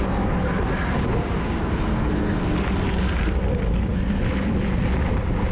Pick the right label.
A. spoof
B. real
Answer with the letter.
B